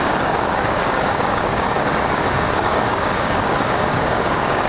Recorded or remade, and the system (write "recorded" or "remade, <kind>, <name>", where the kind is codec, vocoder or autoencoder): remade, codec, DAC